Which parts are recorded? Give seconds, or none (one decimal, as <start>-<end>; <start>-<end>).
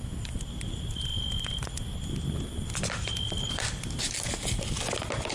0.0-5.3